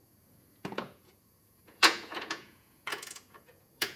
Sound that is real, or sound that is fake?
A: fake